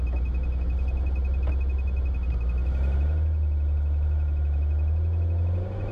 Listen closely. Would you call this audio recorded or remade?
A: recorded